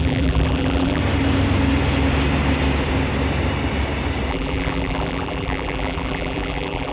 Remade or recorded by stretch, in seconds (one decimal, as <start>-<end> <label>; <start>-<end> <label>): 0.0-1.0 remade; 1.0-4.3 recorded; 4.3-6.9 remade